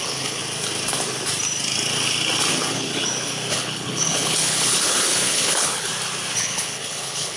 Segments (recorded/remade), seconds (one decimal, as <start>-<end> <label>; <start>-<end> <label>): 0.0-0.4 remade; 0.4-2.5 recorded; 2.5-2.9 remade; 2.9-3.5 recorded; 3.5-5.9 remade; 5.9-6.4 recorded; 6.4-7.4 remade